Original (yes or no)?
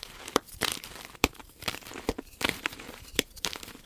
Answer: no